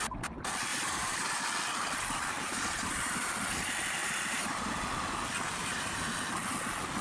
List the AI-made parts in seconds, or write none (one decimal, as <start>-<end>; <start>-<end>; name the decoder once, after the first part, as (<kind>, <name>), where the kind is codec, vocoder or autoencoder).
0.7-1.4 (vocoder, BigVGAN v2); 2.5-3.3; 4.0-4.8; 5.6-6.1